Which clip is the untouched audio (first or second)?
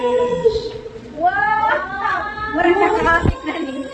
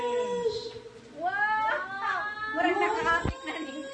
second